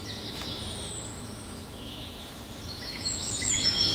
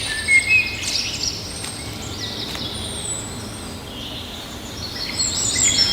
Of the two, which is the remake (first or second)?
first